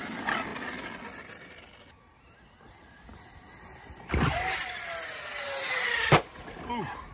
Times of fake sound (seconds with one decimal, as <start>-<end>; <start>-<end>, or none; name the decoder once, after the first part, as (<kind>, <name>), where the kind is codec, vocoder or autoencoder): none